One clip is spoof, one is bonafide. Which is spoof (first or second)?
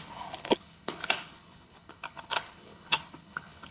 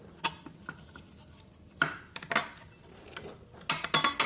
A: first